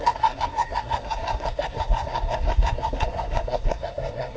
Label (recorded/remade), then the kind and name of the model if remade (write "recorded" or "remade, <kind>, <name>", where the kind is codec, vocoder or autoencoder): remade, codec, SNAC